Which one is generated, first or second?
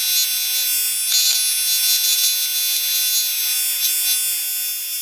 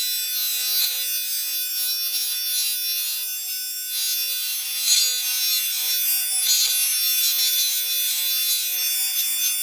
second